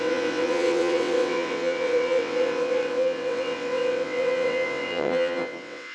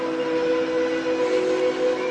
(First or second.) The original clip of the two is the second